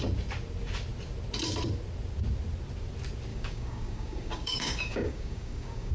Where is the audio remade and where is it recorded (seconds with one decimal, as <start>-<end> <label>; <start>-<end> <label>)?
0.0-3.3 recorded; 3.3-5.9 remade

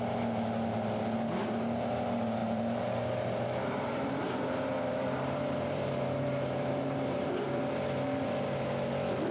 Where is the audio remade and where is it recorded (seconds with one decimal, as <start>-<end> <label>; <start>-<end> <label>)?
0.0-2.4 recorded; 2.4-7.6 remade; 7.6-9.3 recorded